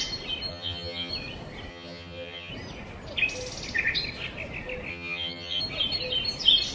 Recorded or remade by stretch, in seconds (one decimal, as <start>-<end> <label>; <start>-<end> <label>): 0.0-0.5 recorded; 0.5-1.1 remade; 1.1-1.7 recorded; 1.7-2.5 remade; 2.5-4.9 recorded; 4.9-5.6 remade; 5.6-6.7 recorded